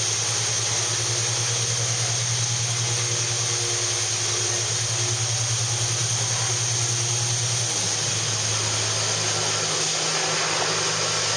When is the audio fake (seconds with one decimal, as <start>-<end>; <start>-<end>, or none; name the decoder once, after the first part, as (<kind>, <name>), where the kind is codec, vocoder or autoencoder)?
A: none